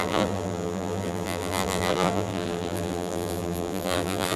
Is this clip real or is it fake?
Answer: fake